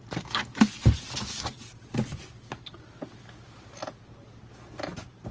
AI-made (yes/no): no